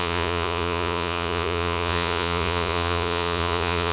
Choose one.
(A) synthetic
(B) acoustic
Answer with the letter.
A